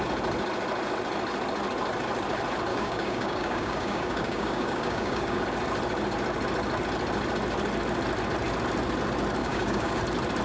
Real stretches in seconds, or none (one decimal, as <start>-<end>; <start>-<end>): 0.0-2.7; 5.4-9.4; 10.0-10.4